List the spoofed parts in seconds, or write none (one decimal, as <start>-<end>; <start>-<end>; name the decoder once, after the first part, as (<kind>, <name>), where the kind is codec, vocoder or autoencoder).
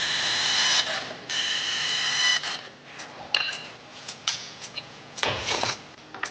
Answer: 3.9-5.7 (vocoder, Vocos)